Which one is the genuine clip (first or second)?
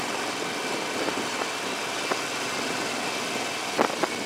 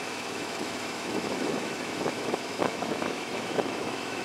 first